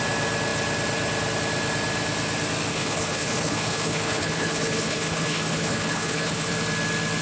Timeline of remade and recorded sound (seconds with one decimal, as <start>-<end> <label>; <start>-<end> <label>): 0.0-2.7 recorded; 2.7-6.5 remade; 6.5-7.2 recorded